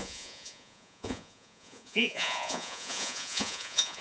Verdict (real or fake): fake